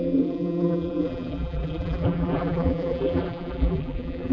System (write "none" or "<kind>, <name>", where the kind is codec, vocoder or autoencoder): vocoder, BigVGAN v2